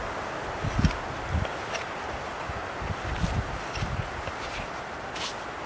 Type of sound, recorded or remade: recorded